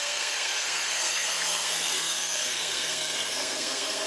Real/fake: fake